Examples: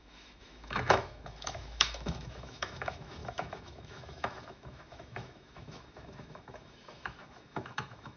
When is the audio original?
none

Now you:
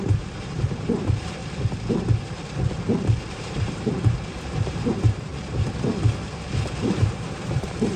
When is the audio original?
1.4-3.3; 5.3-6.8